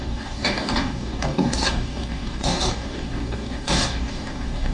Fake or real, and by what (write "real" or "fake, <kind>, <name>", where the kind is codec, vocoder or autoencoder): fake, codec, DAC